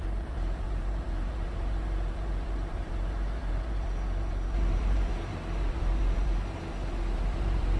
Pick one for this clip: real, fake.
fake